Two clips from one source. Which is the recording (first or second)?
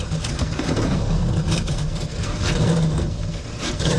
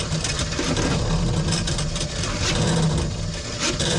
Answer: second